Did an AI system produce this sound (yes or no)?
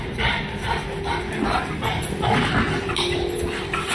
no